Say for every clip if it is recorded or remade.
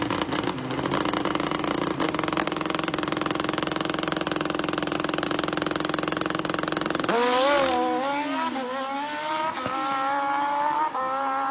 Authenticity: recorded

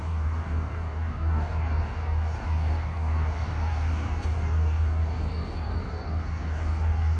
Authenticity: remade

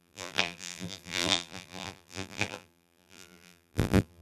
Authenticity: remade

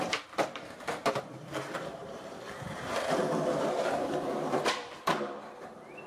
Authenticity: remade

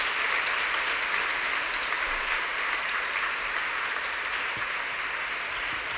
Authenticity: recorded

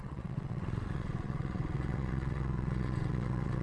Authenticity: remade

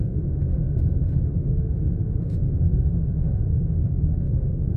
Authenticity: remade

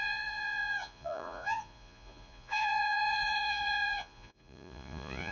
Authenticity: remade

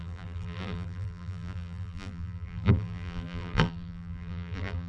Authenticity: remade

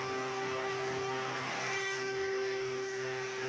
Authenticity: remade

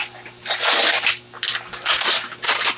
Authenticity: recorded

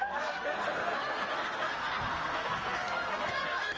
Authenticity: remade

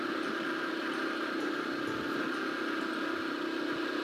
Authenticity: recorded